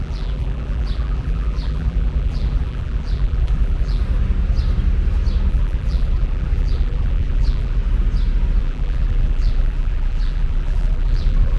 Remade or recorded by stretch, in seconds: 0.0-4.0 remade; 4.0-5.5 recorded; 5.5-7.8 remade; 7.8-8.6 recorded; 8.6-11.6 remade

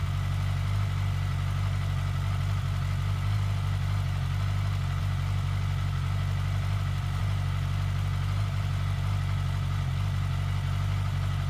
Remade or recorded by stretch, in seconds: 0.0-11.5 recorded

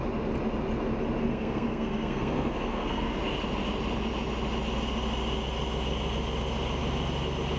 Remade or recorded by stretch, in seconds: 0.0-1.3 recorded; 1.3-3.2 remade; 3.2-7.6 recorded

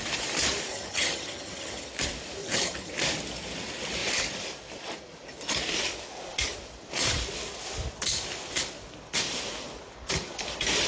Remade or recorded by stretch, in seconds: 0.0-0.7 recorded; 0.7-1.9 remade; 1.9-2.4 recorded; 2.4-2.9 remade; 2.9-10.9 recorded

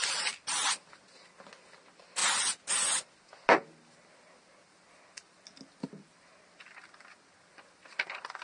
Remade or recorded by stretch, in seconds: 0.0-8.4 recorded

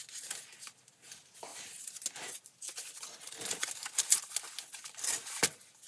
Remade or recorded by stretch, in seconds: 0.0-5.9 recorded